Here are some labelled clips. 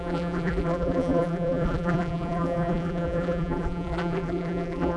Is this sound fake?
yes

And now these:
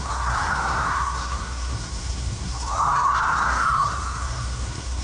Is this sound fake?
yes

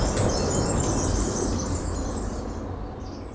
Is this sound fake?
no